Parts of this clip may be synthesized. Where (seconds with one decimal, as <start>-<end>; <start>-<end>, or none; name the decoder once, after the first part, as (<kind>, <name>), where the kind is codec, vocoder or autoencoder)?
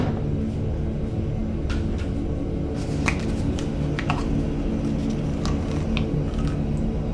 none